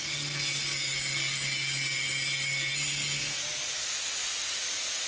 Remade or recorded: recorded